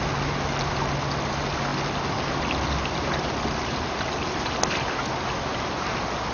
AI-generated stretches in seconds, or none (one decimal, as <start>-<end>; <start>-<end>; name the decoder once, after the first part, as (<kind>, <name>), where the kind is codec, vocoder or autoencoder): none